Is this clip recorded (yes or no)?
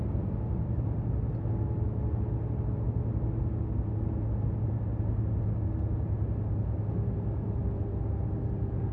yes